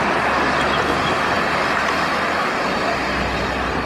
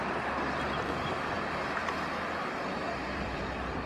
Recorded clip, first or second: first